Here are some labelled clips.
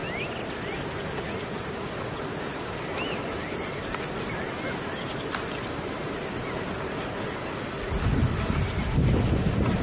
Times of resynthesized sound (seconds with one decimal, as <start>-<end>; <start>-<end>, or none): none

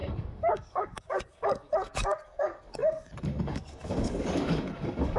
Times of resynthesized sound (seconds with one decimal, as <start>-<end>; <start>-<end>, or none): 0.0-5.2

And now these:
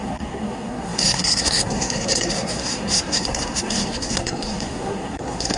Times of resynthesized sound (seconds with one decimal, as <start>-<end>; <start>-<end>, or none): 0.0-5.6

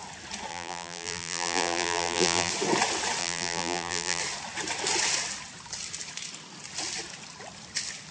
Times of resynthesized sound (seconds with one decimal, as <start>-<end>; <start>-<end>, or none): 0.5-2.5; 3.2-4.2

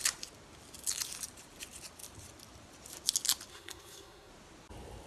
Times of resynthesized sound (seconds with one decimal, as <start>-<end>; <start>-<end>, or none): 3.5-4.3

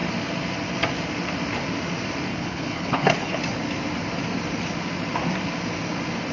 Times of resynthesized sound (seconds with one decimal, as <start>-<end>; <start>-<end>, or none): 2.3-3.4